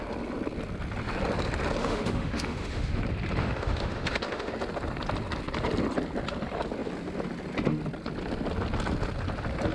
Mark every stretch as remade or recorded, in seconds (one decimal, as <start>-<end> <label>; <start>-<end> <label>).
0.0-1.8 recorded; 1.8-3.0 remade; 3.0-3.4 recorded; 3.4-4.5 remade; 4.5-9.7 recorded